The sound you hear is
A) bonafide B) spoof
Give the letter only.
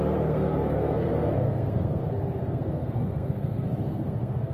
B